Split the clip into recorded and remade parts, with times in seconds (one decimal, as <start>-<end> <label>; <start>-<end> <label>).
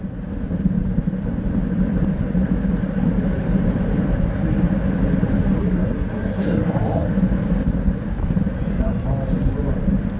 0.0-5.6 recorded; 5.6-7.1 remade; 7.1-10.2 recorded